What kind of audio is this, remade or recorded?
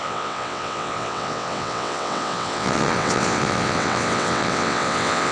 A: remade